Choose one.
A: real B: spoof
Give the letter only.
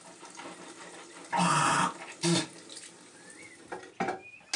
A